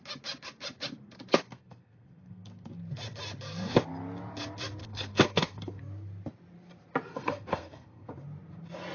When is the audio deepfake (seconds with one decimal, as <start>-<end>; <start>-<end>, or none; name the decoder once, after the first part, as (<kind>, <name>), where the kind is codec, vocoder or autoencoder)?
1.3-2.7 (codec, SNAC); 4.8-5.8; 7.1-8.1